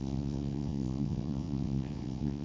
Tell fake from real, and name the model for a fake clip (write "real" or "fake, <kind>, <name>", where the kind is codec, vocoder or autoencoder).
fake, vocoder, WaveNeXt